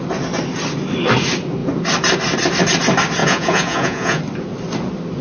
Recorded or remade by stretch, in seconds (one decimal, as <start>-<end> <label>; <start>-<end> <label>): 0.0-3.2 recorded; 3.2-4.2 remade; 4.2-5.2 recorded